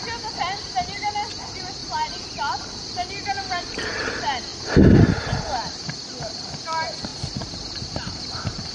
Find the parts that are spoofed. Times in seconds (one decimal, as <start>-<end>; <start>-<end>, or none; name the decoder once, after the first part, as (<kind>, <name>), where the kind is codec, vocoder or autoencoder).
1.8-4.1 (vocoder, BigVGAN v2); 7.1-8.2